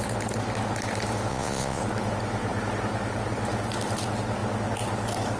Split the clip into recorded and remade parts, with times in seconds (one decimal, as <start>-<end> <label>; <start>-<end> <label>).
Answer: 0.0-1.3 recorded; 1.3-1.8 remade; 1.8-5.4 recorded